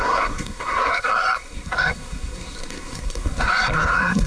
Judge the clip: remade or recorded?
remade